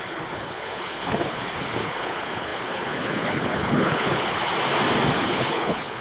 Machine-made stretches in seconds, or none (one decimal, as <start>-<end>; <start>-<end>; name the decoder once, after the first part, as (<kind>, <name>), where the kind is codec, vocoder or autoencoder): 0.0-4.5 (codec, HILCodec); 5.1-6.0